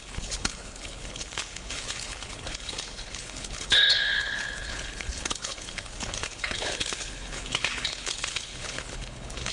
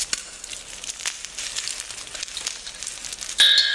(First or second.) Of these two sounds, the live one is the second